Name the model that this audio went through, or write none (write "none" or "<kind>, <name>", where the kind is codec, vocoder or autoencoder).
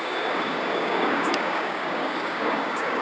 codec, DAC